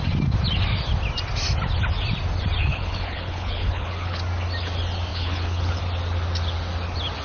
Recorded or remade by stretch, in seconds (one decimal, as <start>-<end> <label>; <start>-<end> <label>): 0.0-2.6 recorded; 2.6-4.2 remade; 4.2-5.1 recorded; 5.1-5.8 remade; 5.8-7.2 recorded

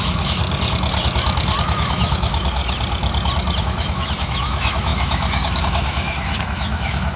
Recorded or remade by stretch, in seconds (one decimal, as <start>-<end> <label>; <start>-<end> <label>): 0.0-0.4 remade; 0.4-1.6 recorded; 1.6-2.6 remade; 2.6-3.6 recorded; 3.6-7.2 remade

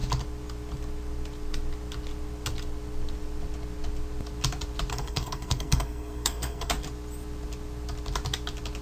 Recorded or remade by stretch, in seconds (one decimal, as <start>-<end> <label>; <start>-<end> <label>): 0.0-4.9 recorded; 4.9-6.7 remade; 6.7-8.8 recorded

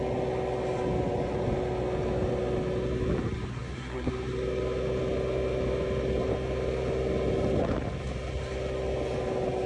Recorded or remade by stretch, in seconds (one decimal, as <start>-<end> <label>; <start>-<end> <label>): 0.0-3.5 recorded; 3.5-4.1 remade; 4.1-9.7 recorded

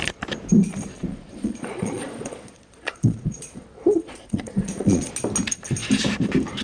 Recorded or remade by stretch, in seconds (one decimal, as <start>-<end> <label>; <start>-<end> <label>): 0.0-1.1 recorded; 1.1-5.1 remade; 5.1-6.6 recorded